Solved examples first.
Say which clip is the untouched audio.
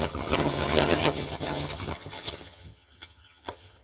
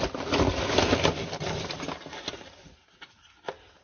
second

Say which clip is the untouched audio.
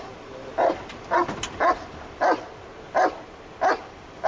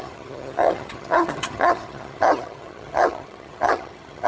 first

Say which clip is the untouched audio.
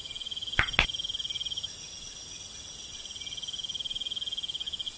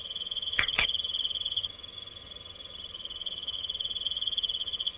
first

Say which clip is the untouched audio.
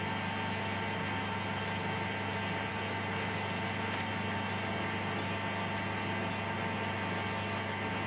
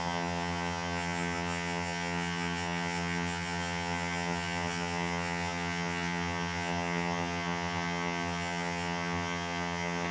first